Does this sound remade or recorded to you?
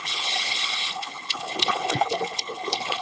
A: remade